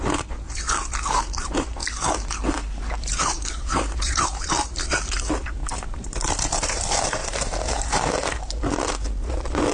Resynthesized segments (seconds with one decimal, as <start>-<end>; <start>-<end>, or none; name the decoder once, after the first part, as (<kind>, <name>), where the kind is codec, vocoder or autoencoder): 0.0-1.8 (vocoder, BigVGAN v2); 3.1-9.7